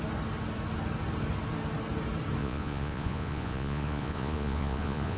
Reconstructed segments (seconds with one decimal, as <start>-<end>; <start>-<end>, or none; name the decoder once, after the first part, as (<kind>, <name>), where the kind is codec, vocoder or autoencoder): 2.4-5.2 (vocoder, Vocos)